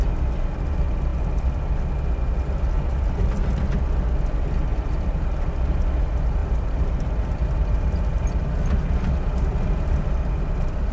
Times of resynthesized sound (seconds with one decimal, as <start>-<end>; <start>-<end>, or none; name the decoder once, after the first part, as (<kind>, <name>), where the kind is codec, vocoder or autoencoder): 4.7-5.5 (vocoder, BigVGAN v2); 6.4-7.8